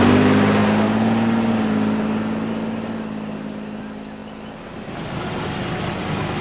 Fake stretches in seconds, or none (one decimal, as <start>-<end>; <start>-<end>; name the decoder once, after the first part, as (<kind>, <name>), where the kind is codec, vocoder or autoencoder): none